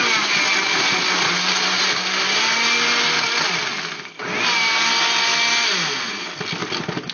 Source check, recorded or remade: recorded